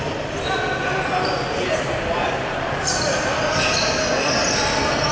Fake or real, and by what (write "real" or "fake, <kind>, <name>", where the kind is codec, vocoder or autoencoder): real